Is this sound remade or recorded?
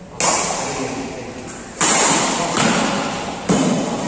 recorded